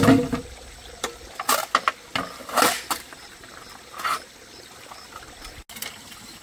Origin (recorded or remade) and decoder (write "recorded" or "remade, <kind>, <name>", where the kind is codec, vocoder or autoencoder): recorded